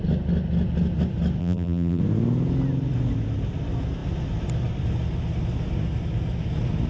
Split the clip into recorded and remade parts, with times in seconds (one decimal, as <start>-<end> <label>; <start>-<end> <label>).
0.0-1.4 recorded; 1.4-2.0 remade; 2.0-6.9 recorded